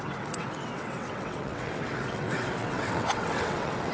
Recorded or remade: remade